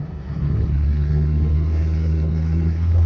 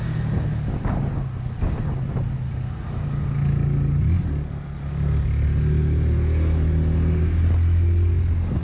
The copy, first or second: first